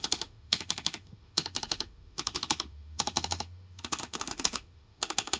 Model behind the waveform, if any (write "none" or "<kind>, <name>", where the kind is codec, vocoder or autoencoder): autoencoder, DAC-VAE